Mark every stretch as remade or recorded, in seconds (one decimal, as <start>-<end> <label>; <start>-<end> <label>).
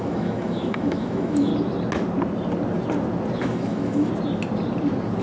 0.0-1.5 remade; 1.5-3.4 recorded; 3.4-4.1 remade; 4.1-5.2 recorded